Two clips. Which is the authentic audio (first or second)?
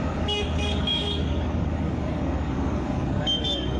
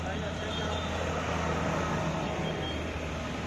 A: second